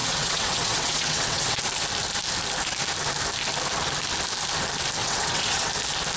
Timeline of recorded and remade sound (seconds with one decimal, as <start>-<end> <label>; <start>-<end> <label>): 0.0-1.6 remade; 1.6-5.0 recorded; 5.0-5.7 remade; 5.7-6.2 recorded